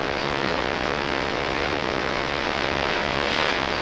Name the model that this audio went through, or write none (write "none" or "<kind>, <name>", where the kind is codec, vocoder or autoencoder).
vocoder, WaveNeXt